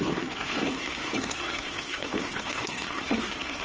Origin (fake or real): fake